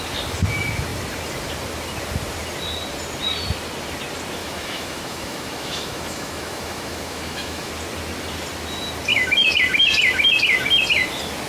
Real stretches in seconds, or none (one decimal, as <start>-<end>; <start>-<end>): 0.0-4.4; 7.7-9.1; 9.6-11.5